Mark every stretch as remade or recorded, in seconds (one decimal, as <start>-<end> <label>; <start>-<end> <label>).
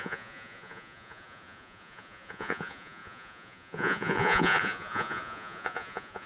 0.0-6.3 remade